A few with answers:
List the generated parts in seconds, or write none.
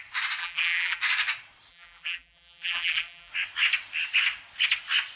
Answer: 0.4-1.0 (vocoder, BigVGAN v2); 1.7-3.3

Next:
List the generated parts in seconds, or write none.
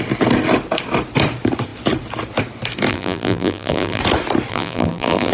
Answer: 2.9-4.0 (vocoder, BigVGAN v2); 4.5-5.3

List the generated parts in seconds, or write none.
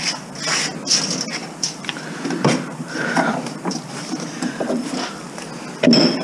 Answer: 1.4-4.5 (vocoder, BigVGAN v2)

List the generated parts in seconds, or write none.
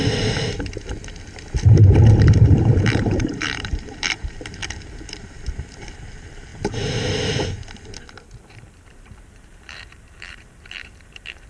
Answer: 2.2-4.6 (vocoder, BigVGAN v2); 5.1-6.5; 8.3-11.5